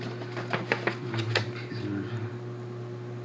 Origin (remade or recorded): recorded